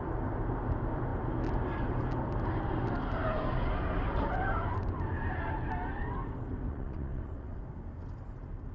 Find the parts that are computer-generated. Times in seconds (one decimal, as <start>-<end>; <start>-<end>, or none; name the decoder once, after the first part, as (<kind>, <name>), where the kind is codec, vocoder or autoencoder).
6.7-7.6 (vocoder, WaveNeXt)